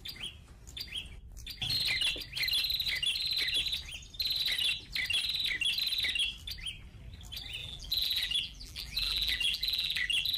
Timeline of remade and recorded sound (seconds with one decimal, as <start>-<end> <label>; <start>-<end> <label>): 0.0-7.6 recorded; 7.6-10.4 remade